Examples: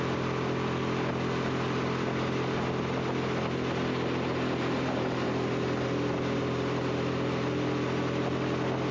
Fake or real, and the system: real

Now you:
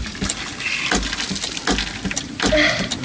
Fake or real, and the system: real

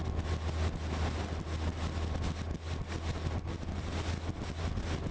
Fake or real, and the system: real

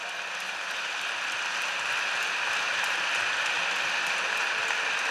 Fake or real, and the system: real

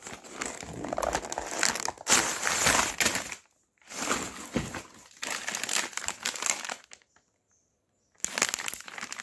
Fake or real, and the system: real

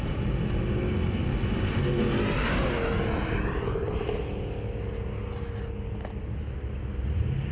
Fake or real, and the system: real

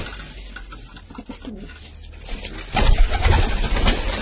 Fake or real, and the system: real